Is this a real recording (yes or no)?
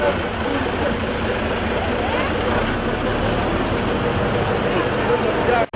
yes